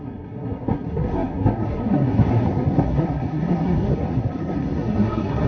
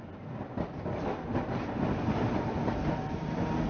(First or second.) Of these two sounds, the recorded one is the second